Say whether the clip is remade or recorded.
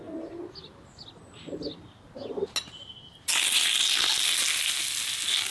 recorded